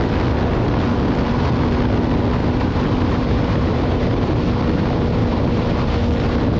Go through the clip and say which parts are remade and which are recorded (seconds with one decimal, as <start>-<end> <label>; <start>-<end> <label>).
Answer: 0.0-2.4 recorded; 2.4-4.3 remade; 4.3-5.2 recorded; 5.2-5.7 remade; 5.7-6.6 recorded